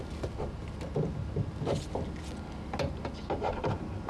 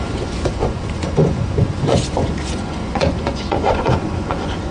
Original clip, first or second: first